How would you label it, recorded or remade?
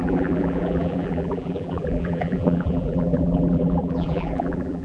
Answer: remade